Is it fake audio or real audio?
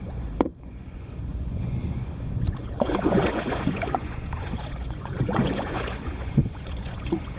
fake